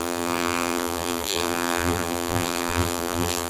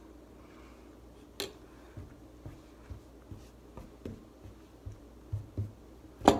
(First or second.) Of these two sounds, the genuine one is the second